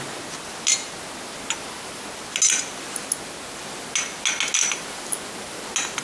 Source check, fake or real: real